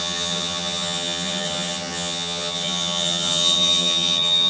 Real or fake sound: fake